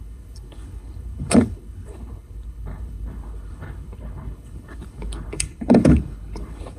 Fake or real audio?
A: fake